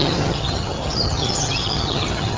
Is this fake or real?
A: fake